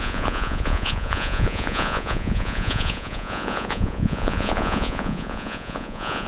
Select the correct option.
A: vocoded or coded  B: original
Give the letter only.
A